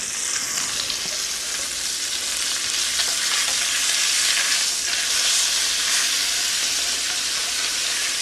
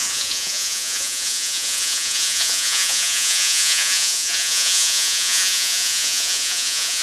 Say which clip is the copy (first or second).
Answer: second